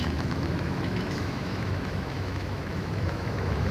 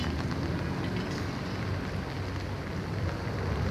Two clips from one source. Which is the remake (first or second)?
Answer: first